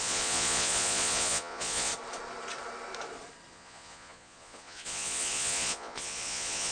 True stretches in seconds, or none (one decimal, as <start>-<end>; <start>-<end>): 1.9-3.5